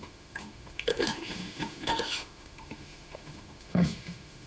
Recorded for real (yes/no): no